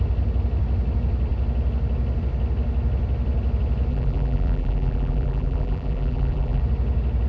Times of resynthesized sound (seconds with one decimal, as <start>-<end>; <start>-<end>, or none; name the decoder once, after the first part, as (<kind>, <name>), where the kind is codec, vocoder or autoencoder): 3.9-6.6 (vocoder, BigVGAN v2)

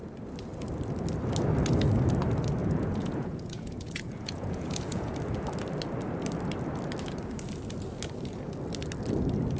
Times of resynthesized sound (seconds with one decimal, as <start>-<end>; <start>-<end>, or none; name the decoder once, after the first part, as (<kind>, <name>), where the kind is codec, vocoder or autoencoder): 2.6-5.1 (vocoder, Vocos)

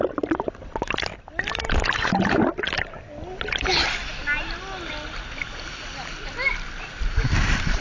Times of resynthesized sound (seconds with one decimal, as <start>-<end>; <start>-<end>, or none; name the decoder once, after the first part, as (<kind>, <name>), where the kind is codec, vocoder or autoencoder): none

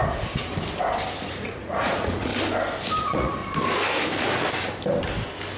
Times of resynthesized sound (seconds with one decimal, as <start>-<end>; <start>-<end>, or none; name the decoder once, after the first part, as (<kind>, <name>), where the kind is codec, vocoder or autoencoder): 1.3-2.3 (vocoder, Vocos); 3.0-3.4

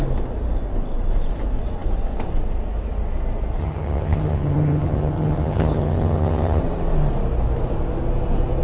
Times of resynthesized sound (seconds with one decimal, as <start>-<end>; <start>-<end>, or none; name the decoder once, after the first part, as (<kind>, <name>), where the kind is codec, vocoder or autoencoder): 3.6-6.6 (vocoder, HiFi-GAN)

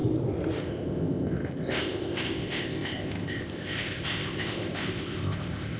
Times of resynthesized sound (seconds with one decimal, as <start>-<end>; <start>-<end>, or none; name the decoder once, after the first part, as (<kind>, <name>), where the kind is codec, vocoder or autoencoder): 0.6-5.8 (codec, ZipCodec)

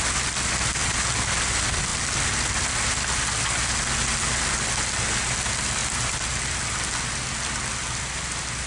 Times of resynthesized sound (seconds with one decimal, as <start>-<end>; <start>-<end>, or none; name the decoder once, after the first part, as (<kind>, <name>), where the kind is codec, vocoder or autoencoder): none

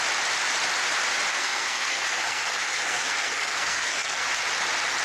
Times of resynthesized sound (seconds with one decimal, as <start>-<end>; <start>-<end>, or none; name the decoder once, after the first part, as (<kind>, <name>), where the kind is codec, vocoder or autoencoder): 1.3-4.3 (codec, SNAC)